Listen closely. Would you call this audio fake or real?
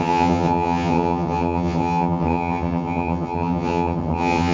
fake